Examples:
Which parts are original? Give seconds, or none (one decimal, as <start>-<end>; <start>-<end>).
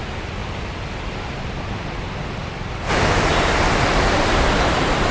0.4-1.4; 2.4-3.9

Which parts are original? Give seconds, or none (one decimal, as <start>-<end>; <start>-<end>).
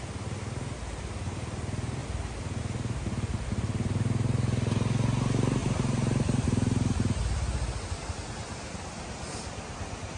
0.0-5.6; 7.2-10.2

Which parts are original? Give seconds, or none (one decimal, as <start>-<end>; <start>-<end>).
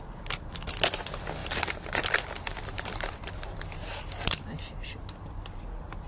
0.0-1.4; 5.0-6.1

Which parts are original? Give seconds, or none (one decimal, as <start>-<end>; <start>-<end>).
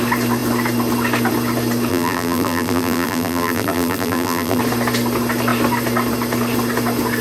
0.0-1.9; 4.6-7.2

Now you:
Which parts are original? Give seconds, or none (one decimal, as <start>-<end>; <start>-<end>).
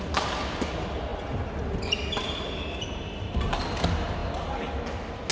0.0-5.3